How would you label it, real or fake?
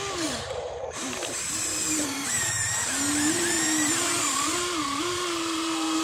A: fake